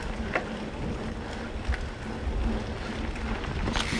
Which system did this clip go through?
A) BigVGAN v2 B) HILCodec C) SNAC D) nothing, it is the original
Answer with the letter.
D